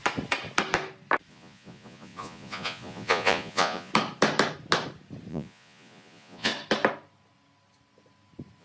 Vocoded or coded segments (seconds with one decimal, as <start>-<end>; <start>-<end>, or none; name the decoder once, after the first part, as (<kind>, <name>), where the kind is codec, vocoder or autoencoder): 1.3-3.9 (vocoder, Vocos); 5.3-6.5